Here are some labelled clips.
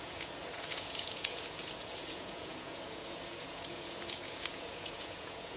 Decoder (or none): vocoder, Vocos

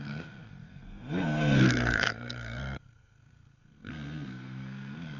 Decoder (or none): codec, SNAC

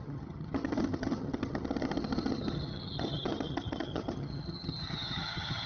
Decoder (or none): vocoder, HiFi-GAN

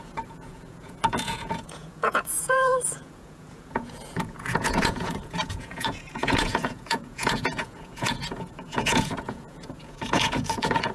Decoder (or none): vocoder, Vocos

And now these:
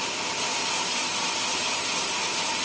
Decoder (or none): none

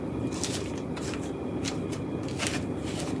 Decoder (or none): none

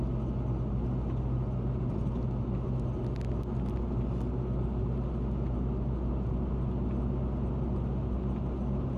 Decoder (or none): none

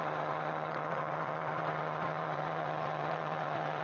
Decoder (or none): vocoder, WaveNeXt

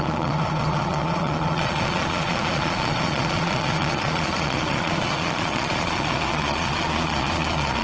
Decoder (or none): vocoder, Vocos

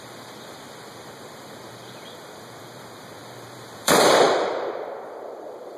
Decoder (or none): vocoder, BigVGAN v2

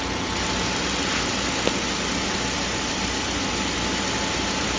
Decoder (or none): none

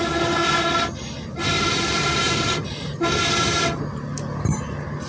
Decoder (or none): none